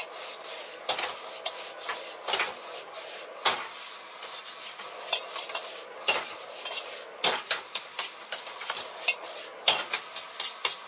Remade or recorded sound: recorded